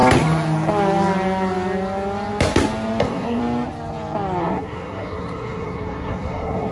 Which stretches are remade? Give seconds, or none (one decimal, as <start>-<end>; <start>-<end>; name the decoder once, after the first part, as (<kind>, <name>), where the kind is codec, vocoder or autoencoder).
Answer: 3.0-3.4 (codec, SNAC); 4.4-6.7